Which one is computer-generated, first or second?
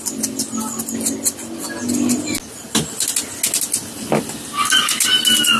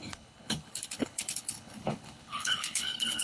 second